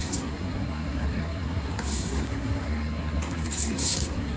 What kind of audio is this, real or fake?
fake